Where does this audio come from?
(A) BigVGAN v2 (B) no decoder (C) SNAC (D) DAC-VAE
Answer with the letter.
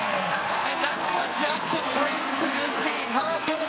C